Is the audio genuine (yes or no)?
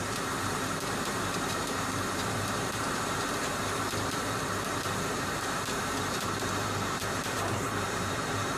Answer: no